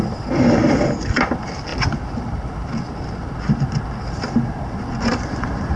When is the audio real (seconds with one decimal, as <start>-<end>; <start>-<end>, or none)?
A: 0.0-5.8